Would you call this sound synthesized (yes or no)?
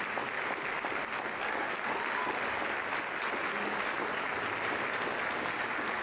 no